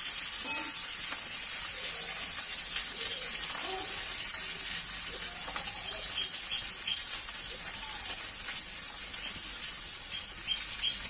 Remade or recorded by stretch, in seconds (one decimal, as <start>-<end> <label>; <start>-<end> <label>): 0.0-11.1 recorded